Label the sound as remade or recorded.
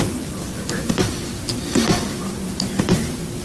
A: recorded